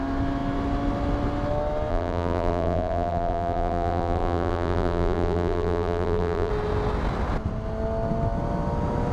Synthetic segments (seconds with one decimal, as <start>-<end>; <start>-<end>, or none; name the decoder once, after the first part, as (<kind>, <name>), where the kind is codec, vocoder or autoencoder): 1.9-6.5 (vocoder, BigVGAN v2)